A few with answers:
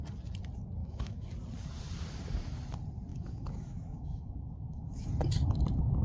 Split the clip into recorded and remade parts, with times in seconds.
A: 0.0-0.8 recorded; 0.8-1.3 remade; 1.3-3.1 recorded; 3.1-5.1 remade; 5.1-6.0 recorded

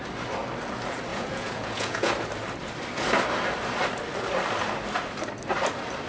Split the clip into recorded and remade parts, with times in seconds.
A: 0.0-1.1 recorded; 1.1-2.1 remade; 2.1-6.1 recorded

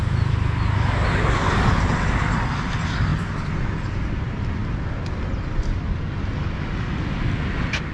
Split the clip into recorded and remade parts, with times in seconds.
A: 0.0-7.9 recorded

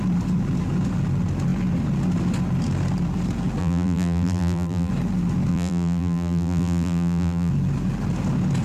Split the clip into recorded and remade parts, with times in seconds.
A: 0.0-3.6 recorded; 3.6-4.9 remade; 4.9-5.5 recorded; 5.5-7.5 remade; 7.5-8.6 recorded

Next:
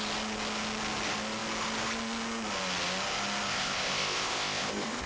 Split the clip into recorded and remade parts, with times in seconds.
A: 0.0-3.5 recorded; 3.5-5.1 remade